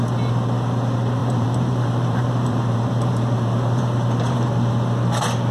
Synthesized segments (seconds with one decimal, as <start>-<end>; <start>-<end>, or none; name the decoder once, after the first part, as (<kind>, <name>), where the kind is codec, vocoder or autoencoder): 1.2-4.5 (vocoder, BigVGAN v2)